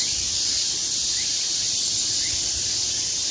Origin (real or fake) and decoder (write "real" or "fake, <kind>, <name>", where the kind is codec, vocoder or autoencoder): fake, vocoder, BigVGAN v2